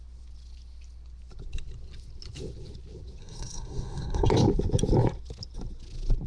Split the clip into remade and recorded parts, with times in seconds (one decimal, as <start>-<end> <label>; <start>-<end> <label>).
0.0-3.2 recorded; 3.2-4.3 remade; 4.3-6.3 recorded